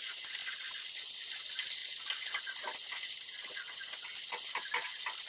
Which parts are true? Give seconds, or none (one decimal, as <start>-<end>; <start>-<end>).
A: 0.0-5.3